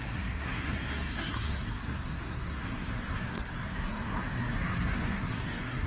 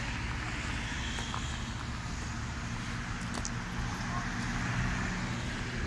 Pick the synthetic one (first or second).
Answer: first